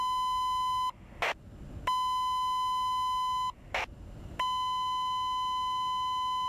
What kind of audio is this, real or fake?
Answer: real